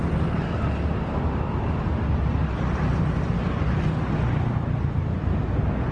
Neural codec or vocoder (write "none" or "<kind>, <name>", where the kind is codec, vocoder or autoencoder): none